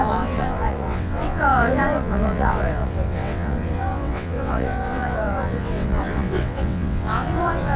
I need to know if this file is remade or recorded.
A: remade